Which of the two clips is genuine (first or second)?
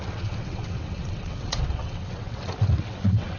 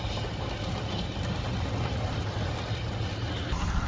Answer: second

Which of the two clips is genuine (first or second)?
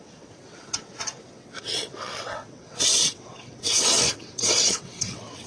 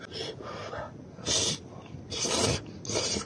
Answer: second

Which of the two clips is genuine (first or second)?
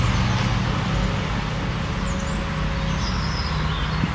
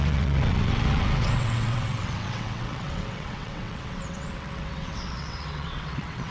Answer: first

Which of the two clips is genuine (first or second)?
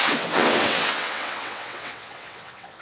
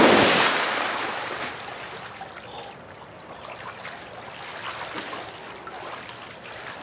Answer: second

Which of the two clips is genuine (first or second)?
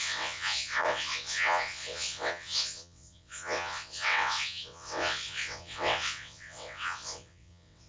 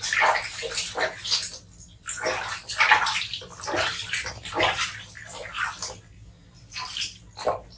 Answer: second